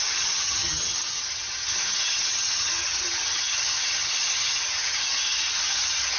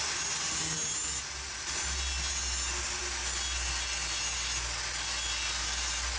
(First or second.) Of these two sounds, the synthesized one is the first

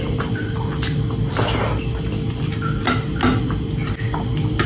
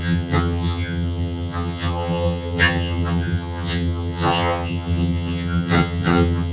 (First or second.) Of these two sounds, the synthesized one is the second